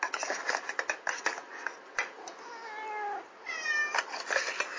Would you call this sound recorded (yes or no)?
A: yes